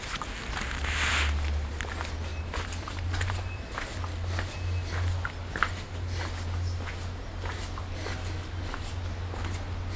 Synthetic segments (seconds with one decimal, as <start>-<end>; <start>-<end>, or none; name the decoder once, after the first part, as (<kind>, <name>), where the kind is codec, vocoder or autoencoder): 2.3-4.0 (vocoder, BigVGAN v2)